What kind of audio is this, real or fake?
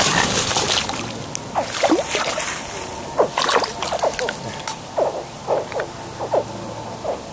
real